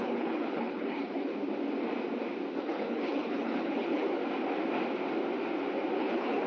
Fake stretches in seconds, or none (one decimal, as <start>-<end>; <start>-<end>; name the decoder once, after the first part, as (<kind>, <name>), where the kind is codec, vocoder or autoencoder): 0.0-1.3 (codec, HILCodec); 2.6-4.2; 6.0-6.5